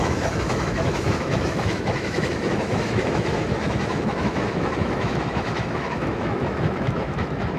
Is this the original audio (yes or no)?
no